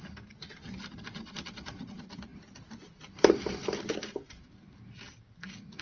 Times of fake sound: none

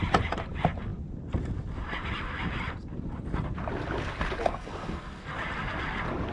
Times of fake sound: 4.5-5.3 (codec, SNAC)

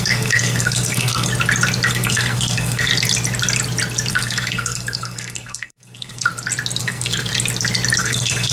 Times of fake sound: 0.0-1.3 (codec, SNAC); 1.9-2.9; 4.1-6.3; 6.8-7.3; 8.0-8.5